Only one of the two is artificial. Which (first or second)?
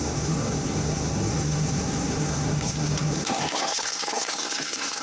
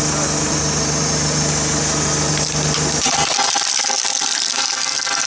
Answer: first